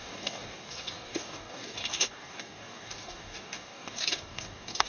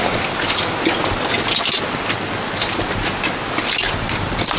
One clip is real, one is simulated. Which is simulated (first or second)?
first